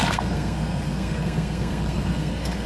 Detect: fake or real fake